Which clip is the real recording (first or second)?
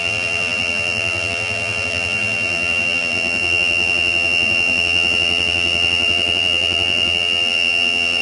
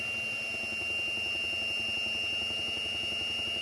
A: second